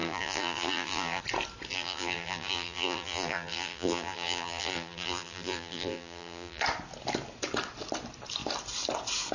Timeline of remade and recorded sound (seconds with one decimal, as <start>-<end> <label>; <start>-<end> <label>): 0.0-1.2 remade; 1.2-1.7 recorded; 1.7-6.6 remade; 6.6-9.3 recorded

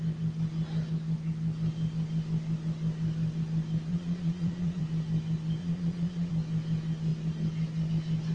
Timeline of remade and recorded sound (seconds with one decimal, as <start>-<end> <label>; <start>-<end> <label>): 0.0-3.9 recorded; 3.9-4.8 remade; 4.8-5.6 recorded; 5.6-6.3 remade; 6.3-8.3 recorded